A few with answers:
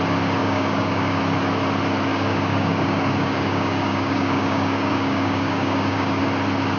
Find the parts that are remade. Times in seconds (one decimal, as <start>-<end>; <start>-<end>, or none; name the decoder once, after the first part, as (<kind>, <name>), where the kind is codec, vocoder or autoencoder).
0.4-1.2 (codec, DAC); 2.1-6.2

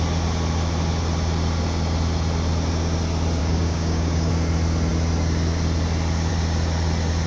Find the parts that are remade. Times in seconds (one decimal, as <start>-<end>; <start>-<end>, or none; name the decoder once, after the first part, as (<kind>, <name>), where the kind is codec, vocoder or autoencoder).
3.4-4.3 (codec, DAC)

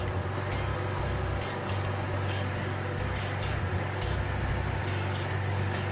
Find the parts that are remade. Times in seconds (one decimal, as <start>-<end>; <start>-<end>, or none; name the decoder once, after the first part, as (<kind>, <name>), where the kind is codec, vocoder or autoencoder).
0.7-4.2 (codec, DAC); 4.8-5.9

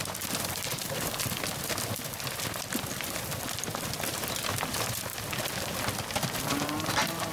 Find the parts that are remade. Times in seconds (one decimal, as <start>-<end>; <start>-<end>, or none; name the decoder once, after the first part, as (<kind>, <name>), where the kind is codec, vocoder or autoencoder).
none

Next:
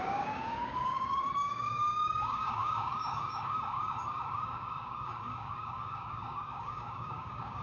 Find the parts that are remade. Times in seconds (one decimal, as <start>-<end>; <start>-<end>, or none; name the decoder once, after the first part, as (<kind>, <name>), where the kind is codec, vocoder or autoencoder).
0.0-7.6 (codec, DAC)

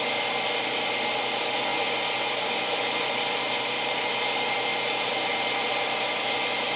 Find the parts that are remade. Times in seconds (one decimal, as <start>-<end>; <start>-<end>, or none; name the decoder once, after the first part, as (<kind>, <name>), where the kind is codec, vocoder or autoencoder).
none

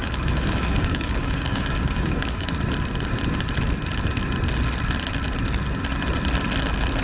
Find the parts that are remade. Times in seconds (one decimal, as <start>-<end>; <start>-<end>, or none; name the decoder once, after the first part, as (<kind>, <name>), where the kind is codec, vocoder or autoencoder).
0.0-2.5 (codec, DAC)

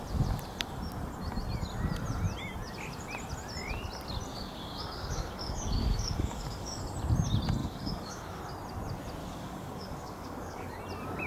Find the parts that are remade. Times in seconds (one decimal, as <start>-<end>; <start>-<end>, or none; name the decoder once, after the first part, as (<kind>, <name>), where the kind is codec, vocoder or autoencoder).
4.3-6.8 (codec, DAC); 7.6-8.4; 9.2-10.8